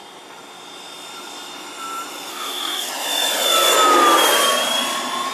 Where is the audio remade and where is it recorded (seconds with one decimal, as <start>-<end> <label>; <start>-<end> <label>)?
0.0-2.3 recorded; 2.3-2.9 remade; 2.9-5.3 recorded